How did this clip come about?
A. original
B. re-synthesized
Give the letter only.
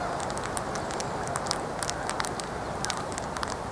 A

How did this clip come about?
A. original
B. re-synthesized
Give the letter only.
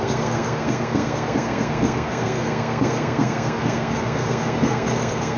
B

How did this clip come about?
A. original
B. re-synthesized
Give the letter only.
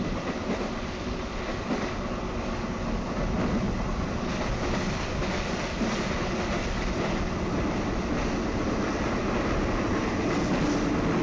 A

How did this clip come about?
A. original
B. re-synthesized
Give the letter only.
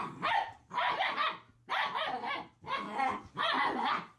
A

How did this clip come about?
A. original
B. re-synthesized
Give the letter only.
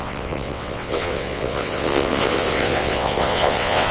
B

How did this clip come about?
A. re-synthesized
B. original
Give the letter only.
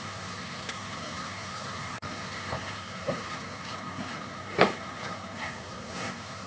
A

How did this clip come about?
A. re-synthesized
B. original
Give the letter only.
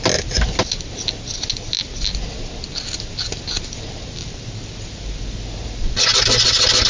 B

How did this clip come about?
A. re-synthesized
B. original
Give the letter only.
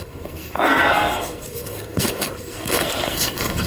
A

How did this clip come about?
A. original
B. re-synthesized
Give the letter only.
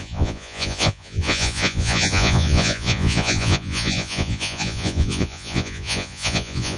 B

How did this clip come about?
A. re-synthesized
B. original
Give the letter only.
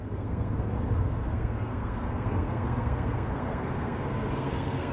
A